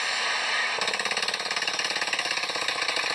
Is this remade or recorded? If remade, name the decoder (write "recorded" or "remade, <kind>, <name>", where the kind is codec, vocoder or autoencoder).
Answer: recorded